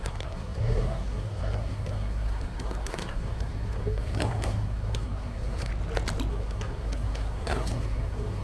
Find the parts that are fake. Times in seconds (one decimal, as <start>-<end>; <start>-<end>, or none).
0.0-5.7; 6.3-8.4